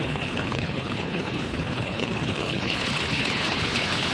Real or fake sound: fake